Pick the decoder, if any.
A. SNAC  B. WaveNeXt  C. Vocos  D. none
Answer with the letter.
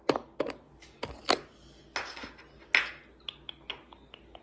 D